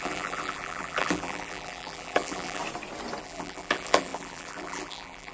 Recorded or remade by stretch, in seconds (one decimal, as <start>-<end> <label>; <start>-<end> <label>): 0.0-2.6 remade; 2.6-3.2 recorded; 3.2-5.3 remade